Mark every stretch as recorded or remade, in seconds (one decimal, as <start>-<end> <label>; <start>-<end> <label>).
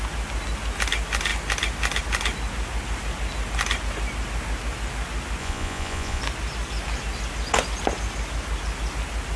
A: 0.0-5.4 recorded; 5.4-6.2 remade; 6.2-9.4 recorded